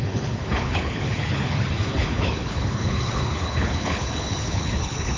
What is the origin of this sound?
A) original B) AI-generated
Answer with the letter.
B